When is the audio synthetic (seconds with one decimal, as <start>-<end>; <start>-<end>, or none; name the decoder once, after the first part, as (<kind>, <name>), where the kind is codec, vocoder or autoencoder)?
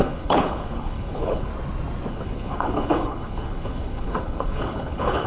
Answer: 0.0-1.5 (codec, HILCodec); 2.1-5.3